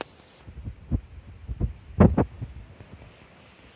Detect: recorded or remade recorded